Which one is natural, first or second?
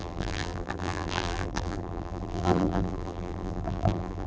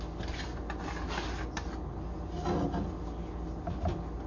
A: second